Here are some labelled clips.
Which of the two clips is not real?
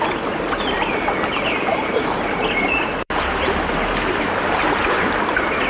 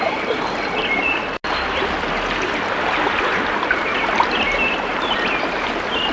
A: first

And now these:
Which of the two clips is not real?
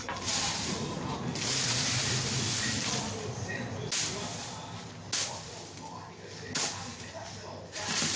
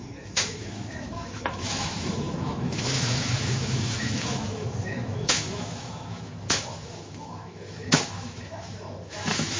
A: second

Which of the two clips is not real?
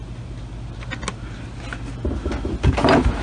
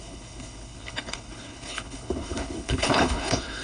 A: second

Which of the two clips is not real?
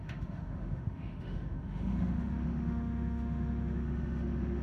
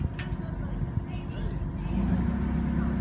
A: first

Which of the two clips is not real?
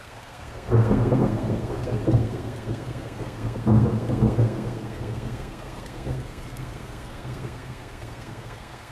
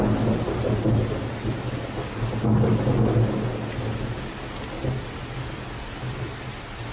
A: first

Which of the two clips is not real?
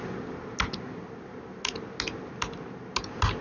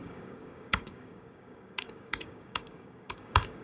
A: second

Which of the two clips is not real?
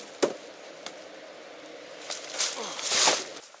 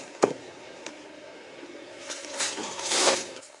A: second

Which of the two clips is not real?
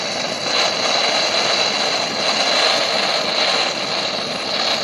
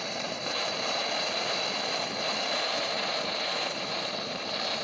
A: second